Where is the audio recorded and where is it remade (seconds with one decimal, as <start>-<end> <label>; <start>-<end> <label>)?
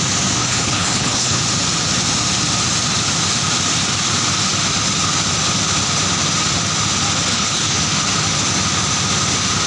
0.0-0.4 recorded; 0.4-1.4 remade; 1.4-7.3 recorded; 7.3-7.8 remade; 7.8-9.7 recorded